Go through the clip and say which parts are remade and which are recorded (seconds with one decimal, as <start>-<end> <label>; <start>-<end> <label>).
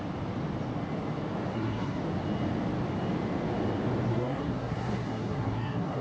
0.0-1.5 recorded; 1.5-2.0 remade; 2.0-4.1 recorded; 4.1-6.0 remade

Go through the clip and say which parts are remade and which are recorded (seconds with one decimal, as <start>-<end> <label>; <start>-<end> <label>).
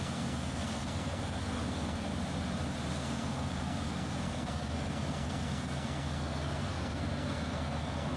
0.0-2.1 remade; 2.1-2.9 recorded; 2.9-8.2 remade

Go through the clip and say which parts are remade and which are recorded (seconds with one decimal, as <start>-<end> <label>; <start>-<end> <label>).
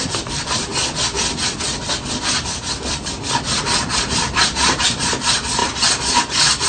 0.0-0.7 remade; 0.7-4.0 recorded; 4.0-5.6 remade; 5.6-6.7 recorded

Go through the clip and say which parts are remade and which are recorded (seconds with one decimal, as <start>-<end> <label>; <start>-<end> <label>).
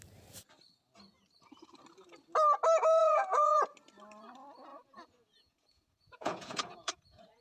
0.0-3.0 recorded; 3.0-3.6 remade; 3.6-4.7 recorded; 4.7-7.4 remade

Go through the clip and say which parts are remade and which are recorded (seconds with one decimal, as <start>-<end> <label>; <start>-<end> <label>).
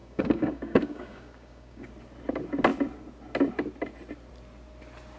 0.0-1.9 remade; 1.9-5.2 recorded